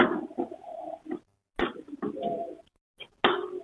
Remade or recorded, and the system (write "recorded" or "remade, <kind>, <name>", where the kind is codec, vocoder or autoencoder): recorded